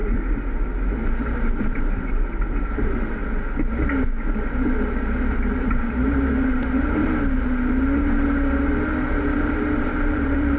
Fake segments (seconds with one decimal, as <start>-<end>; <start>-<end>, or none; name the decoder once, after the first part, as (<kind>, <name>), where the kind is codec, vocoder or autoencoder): 1.6-3.2 (vocoder, BigVGAN v2); 4.4-7.0; 9.1-10.6